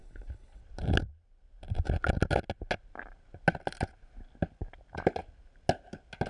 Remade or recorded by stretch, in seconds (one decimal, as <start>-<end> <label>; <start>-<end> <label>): 0.0-0.6 remade; 0.6-6.3 recorded